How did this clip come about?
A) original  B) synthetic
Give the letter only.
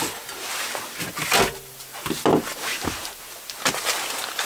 A